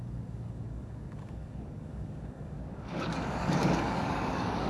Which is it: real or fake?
fake